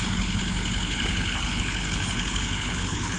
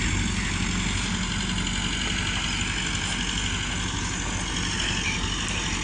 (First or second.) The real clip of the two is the second